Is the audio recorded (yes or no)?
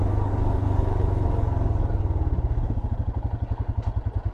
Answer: yes